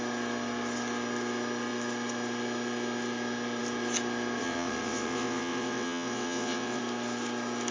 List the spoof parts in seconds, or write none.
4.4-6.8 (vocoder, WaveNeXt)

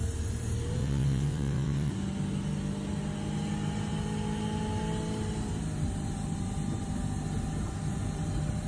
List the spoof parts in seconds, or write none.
0.8-1.9 (vocoder, WaveNeXt)

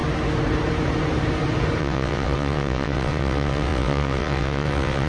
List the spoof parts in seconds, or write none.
1.8-5.1 (vocoder, WaveNeXt)

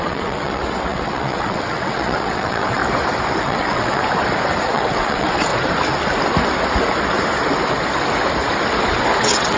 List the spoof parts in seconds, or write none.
0.0-2.8 (vocoder, WaveNeXt); 3.4-4.0; 4.6-5.5; 9.2-9.6

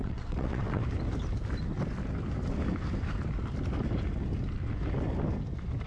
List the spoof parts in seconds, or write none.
0.0-0.8 (vocoder, WaveNeXt)

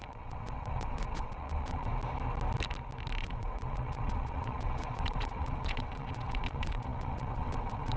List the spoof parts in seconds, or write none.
0.0-1.9 (vocoder, WaveNeXt); 3.2-8.0